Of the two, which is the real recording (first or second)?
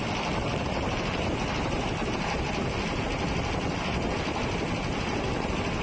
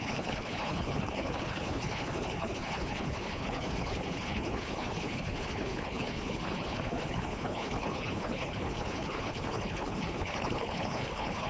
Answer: first